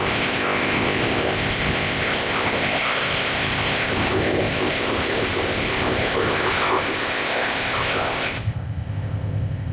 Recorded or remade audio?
remade